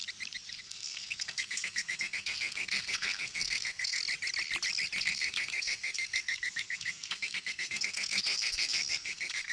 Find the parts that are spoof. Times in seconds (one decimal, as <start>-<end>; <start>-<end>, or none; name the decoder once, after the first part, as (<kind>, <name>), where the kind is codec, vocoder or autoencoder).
0.6-4.0 (codec, SNAC); 5.0-9.5